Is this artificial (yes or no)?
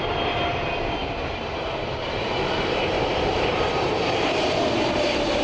yes